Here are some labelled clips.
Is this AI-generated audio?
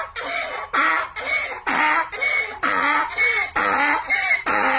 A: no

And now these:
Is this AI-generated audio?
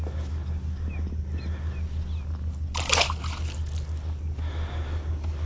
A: no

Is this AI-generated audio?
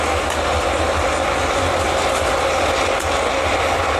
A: no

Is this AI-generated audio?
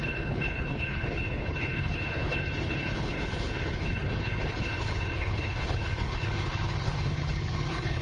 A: yes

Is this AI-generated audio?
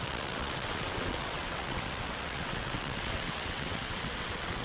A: yes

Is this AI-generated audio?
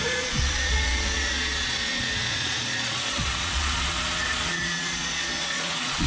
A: yes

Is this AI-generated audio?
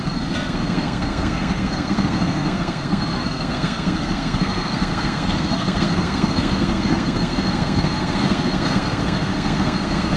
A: yes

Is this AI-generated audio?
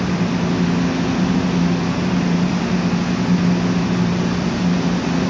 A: no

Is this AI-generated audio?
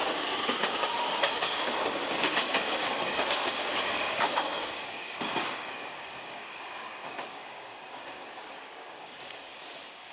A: yes